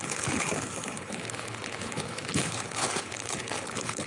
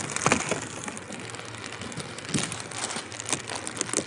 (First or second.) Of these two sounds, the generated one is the first